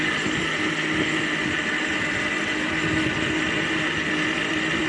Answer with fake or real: real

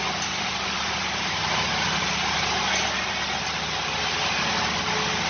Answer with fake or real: real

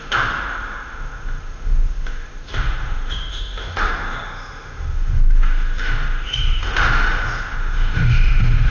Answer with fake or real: fake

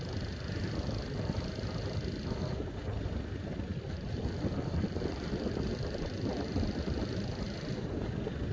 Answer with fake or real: real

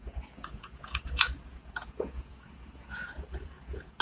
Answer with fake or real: fake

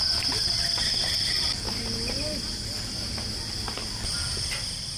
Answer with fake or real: real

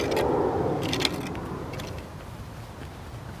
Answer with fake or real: real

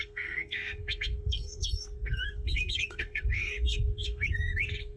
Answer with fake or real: fake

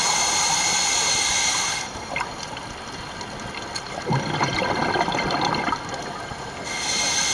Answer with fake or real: real